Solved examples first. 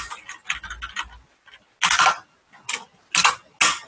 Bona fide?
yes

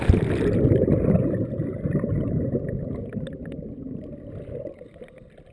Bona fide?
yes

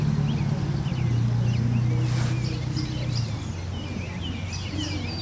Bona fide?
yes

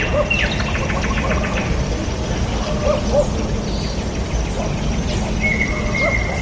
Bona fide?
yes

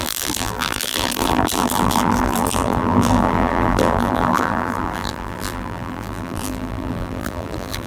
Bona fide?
no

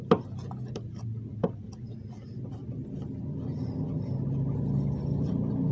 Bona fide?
yes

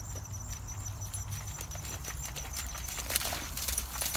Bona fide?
yes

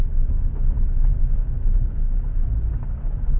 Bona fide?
yes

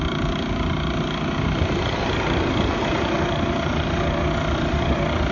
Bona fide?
yes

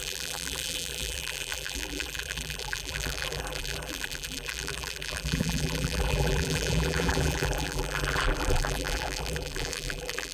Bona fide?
no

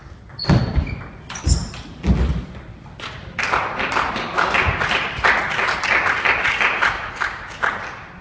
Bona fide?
yes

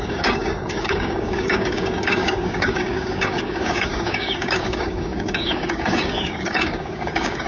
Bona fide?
no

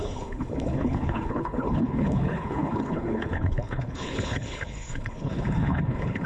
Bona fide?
no